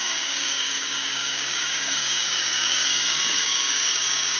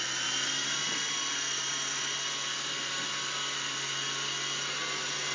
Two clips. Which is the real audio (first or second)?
second